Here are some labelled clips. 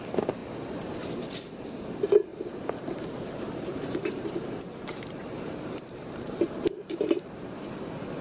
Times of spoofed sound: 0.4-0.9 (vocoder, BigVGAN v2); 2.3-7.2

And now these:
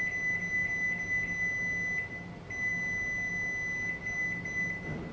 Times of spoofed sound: none

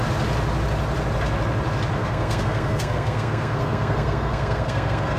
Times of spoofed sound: 2.0-5.2 (codec, SNAC)